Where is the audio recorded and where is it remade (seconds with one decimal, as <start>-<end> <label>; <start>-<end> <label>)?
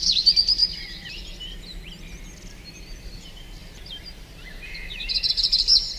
0.0-0.6 remade; 0.6-2.5 recorded; 2.5-6.0 remade